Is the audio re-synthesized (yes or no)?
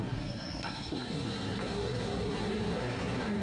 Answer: yes